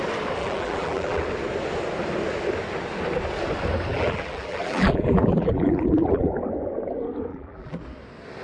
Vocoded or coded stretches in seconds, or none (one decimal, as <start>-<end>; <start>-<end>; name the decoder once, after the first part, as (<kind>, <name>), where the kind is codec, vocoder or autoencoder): 0.4-1.2 (vocoder, BigVGAN v2); 3.9-6.3; 7.3-7.8

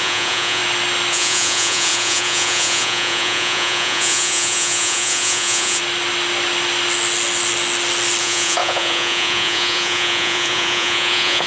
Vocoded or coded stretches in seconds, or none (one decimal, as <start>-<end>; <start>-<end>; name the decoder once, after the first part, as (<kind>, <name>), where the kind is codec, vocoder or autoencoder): 0.0-0.6 (vocoder, Vocos); 1.1-5.8; 8.2-11.5

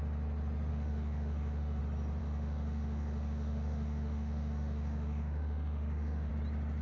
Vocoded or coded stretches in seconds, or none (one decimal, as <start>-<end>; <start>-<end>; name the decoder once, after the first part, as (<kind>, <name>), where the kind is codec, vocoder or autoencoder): 0.7-1.8 (autoencoder, DAC-VAE); 2.2-6.3

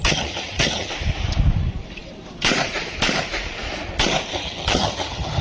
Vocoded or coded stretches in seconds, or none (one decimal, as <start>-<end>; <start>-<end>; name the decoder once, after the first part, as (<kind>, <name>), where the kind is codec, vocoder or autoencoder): 0.0-0.9 (vocoder, HiFi-GAN); 4.3-5.4

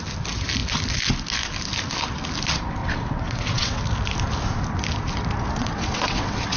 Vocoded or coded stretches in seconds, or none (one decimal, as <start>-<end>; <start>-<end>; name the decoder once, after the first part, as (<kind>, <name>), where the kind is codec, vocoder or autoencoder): 2.8-3.8 (vocoder, WaveNeXt); 5.6-6.6

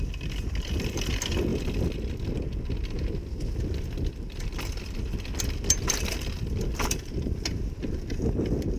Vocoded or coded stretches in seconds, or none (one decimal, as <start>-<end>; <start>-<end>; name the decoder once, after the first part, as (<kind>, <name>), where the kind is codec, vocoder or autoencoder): none

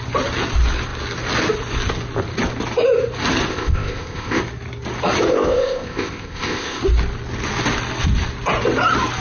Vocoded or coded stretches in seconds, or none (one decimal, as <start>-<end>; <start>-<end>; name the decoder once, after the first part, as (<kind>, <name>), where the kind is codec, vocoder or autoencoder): 3.5-4.4 (codec, ZipCodec); 5.3-6.8